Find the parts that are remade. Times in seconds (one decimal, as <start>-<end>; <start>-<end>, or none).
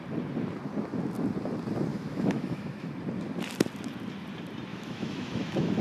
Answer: 1.9-2.9; 4.7-5.8